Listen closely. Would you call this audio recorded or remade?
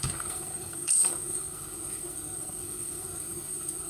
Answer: remade